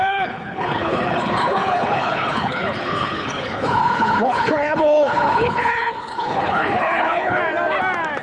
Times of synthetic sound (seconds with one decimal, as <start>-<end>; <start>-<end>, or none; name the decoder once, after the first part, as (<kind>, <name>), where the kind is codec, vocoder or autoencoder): 0.0-7.4 (codec, HILCodec)